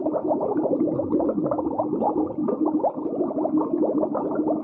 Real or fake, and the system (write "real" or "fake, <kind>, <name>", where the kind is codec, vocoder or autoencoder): real